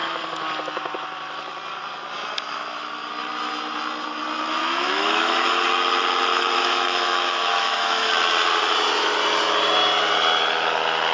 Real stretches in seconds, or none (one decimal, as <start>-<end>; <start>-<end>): 0.0-4.6; 5.7-6.3; 8.1-11.1